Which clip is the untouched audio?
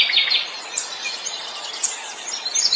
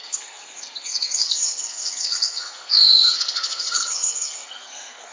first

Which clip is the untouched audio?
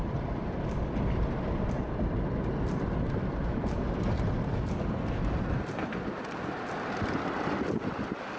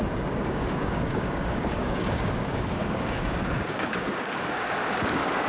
first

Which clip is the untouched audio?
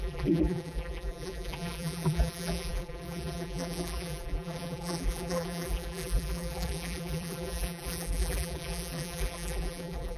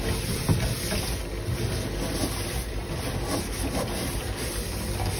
second